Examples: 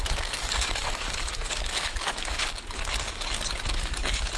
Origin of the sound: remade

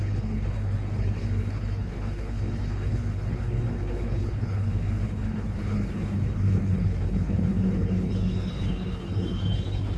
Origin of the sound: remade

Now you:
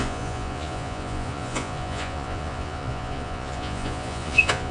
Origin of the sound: remade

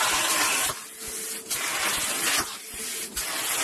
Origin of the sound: recorded